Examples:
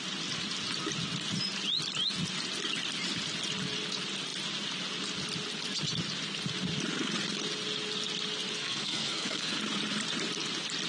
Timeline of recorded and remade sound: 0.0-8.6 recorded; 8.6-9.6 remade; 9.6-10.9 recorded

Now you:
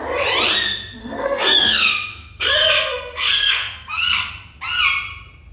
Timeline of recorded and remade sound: 0.0-1.0 recorded; 1.0-4.3 remade; 4.3-5.5 recorded

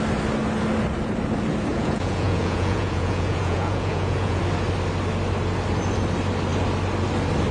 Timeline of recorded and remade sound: 0.0-1.7 recorded; 1.7-4.4 remade; 4.4-7.5 recorded

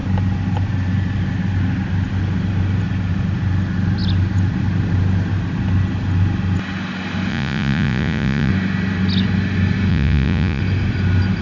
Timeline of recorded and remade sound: 0.0-7.3 recorded; 7.3-8.5 remade; 8.5-9.9 recorded; 9.9-10.6 remade; 10.6-11.4 recorded

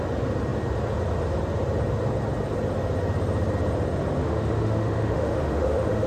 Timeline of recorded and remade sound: 0.0-4.2 recorded; 4.2-6.1 remade